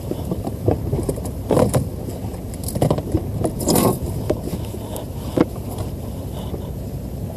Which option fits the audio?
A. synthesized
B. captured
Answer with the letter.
B